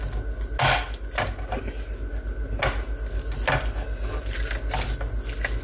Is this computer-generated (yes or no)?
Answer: no